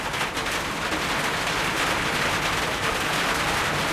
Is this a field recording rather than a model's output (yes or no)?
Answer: yes